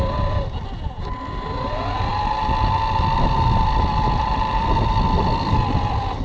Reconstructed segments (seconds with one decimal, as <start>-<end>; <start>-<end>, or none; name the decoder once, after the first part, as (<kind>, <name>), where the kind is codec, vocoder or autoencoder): none